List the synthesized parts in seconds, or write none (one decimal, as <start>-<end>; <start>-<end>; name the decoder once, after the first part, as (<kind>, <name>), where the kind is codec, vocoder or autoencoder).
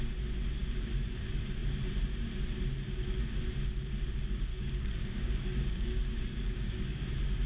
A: 4.5-7.0 (codec, DAC)